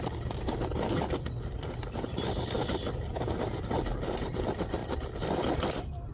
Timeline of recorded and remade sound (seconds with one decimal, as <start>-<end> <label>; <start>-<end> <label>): 0.0-6.1 recorded